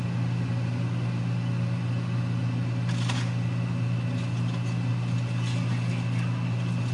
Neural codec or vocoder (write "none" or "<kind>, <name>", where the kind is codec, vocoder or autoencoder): none